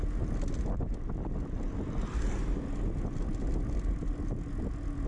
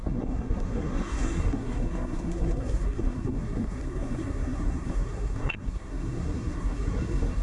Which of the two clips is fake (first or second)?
second